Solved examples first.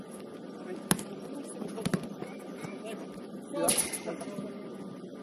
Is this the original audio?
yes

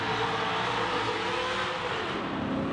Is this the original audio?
yes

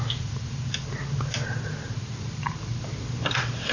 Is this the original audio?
yes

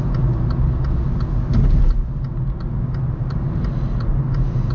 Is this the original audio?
yes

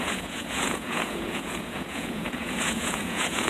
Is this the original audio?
no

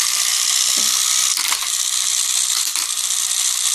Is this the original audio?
yes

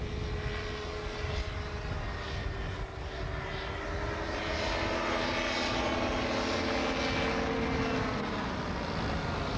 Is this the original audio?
yes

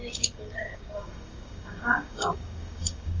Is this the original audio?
no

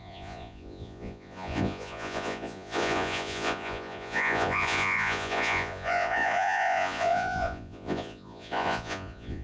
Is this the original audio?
no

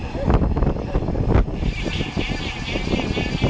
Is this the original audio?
yes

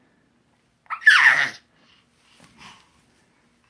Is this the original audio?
yes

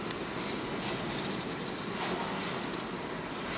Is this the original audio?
yes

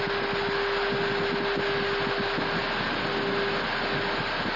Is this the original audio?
yes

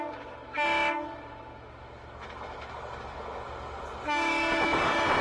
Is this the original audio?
yes